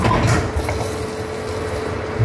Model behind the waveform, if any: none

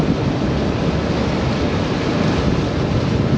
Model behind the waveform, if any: none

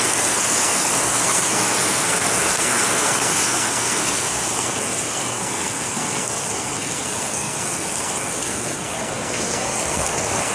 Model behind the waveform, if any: codec, SNAC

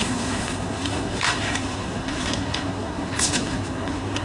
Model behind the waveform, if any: codec, SNAC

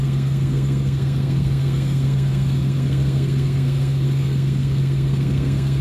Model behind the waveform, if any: codec, SNAC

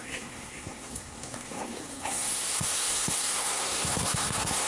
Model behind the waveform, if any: codec, SNAC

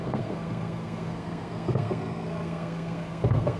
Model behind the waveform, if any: codec, SNAC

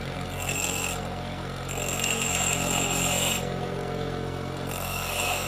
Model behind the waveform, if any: codec, SNAC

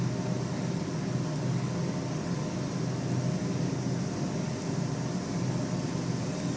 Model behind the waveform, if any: none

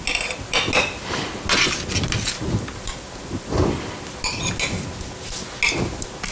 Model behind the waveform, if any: none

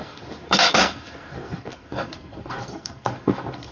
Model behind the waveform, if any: codec, SNAC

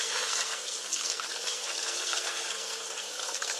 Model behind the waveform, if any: codec, SNAC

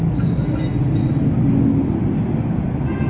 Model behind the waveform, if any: none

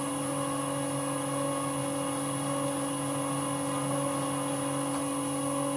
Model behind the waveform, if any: none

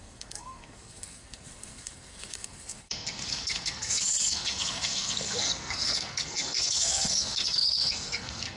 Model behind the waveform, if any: codec, SNAC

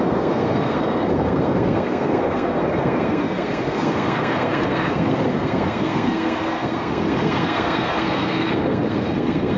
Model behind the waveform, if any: codec, SNAC